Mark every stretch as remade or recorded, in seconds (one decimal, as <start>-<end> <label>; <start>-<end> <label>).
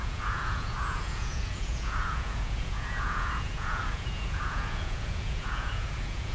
0.0-6.3 remade